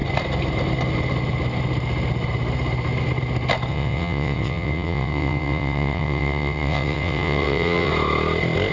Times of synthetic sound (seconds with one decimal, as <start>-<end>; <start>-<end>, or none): 3.7-7.9